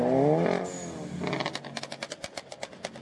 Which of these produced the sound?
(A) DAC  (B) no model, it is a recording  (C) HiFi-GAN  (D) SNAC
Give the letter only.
B